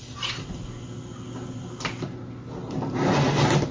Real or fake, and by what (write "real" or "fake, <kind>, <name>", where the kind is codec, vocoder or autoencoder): real